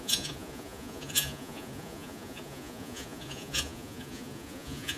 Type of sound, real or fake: fake